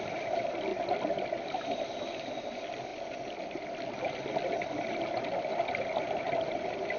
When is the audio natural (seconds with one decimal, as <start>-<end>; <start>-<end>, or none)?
0.0-7.0